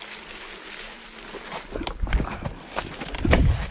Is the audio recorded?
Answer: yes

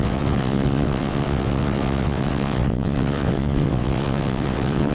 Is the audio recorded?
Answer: no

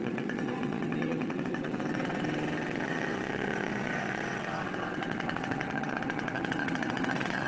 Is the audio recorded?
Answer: no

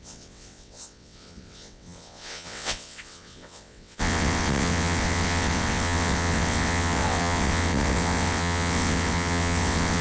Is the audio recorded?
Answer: no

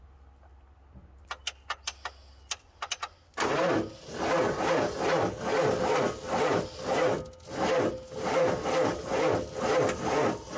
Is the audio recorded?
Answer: yes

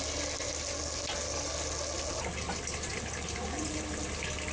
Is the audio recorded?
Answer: yes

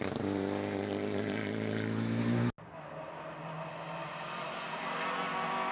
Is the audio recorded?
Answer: yes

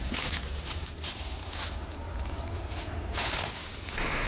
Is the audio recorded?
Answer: yes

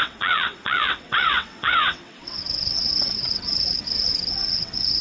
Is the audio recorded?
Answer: no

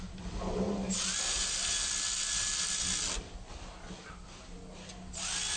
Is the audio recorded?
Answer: yes